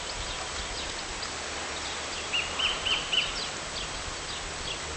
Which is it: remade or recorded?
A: recorded